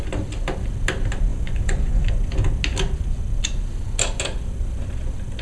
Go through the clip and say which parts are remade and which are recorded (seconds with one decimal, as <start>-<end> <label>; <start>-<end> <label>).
0.0-1.3 recorded; 1.3-2.1 remade; 2.1-5.4 recorded